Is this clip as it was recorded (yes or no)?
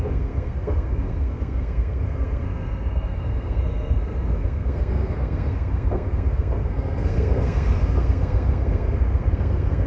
no